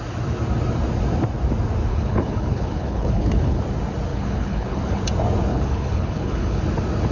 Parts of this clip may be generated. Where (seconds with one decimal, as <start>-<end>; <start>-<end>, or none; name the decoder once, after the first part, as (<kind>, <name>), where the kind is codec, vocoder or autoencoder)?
1.9-3.6 (codec, HILCodec); 4.1-5.0; 5.5-6.6